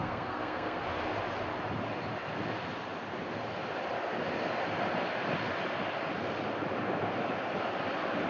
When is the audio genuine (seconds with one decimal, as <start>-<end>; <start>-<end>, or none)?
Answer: 0.8-8.3